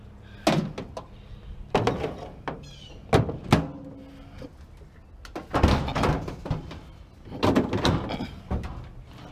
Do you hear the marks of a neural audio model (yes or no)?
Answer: no